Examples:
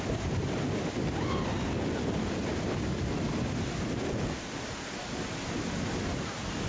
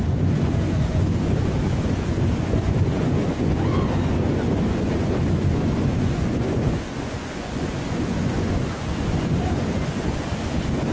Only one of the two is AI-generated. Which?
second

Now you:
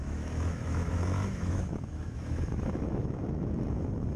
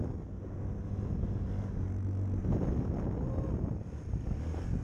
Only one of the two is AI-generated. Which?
first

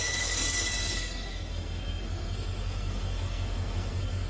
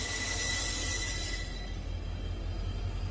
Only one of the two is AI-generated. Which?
first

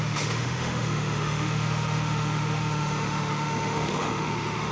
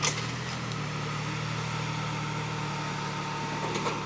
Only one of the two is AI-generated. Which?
first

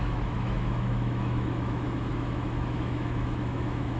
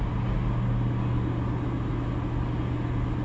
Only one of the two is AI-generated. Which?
first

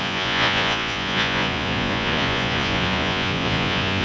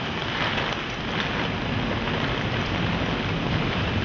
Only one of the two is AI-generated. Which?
first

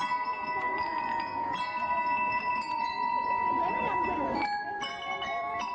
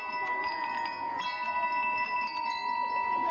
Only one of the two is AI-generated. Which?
first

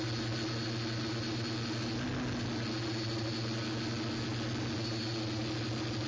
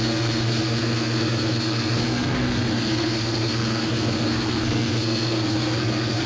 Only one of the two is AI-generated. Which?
second